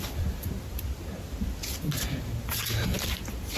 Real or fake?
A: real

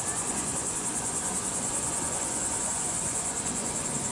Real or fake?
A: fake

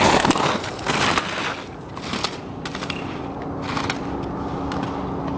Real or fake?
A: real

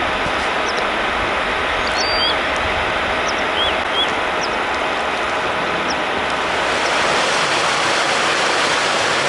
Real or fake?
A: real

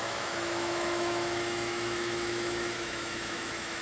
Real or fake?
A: fake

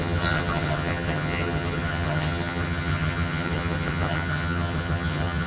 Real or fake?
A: fake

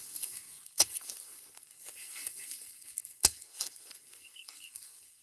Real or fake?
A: fake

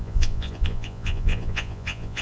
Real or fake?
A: fake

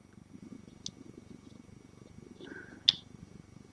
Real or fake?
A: real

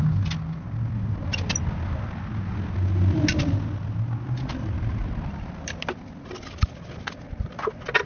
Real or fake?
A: real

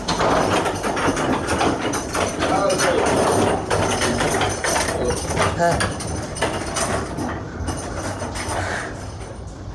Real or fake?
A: real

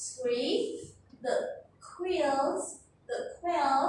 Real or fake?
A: real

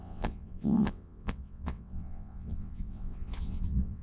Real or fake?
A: fake